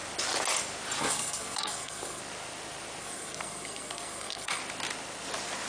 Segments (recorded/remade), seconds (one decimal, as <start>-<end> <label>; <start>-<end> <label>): 0.0-1.0 recorded; 1.0-2.2 remade; 2.2-3.0 recorded; 3.0-4.6 remade; 4.6-5.7 recorded